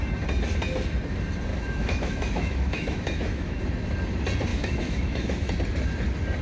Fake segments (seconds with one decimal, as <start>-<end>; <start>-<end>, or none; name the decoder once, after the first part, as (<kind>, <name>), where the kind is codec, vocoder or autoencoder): 1.5-3.6 (autoencoder, DAC-VAE); 4.5-5.5